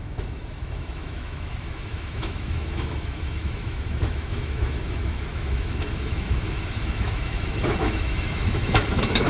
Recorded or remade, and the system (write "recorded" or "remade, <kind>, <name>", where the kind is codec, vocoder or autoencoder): remade, autoencoder, DAC-VAE